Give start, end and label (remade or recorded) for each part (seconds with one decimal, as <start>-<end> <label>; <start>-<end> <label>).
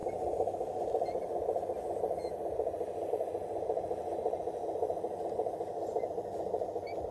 0.0-7.1 recorded